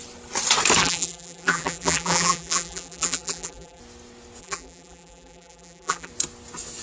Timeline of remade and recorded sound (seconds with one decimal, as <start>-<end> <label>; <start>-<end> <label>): 0.0-0.8 recorded; 0.8-3.8 remade; 3.8-4.4 recorded; 4.4-6.1 remade; 6.1-6.8 recorded